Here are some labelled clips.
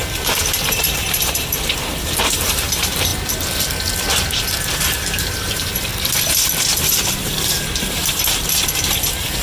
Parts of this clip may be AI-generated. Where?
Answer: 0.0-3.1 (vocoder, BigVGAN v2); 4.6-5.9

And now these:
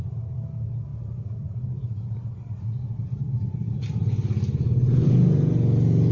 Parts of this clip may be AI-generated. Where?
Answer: 0.9-3.7 (vocoder, BigVGAN v2)

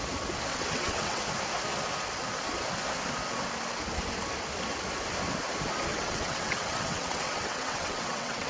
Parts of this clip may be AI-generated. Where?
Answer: 0.5-1.2 (vocoder, WaveNeXt); 5.9-8.5

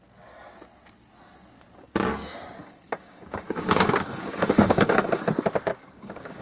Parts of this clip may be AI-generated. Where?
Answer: 2.6-5.3 (codec, DAC); 5.7-6.4

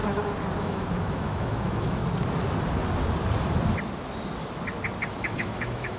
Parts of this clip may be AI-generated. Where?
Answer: 0.6-2.0 (autoencoder, DAC-VAE); 5.0-6.0